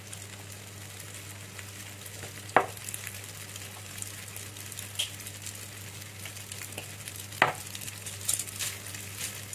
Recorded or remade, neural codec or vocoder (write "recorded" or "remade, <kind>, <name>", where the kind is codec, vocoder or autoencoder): recorded